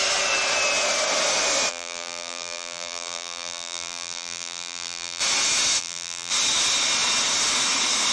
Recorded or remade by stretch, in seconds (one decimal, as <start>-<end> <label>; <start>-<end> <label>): 0.0-1.7 recorded; 1.7-5.2 remade; 5.2-5.8 recorded; 5.8-6.3 remade; 6.3-8.1 recorded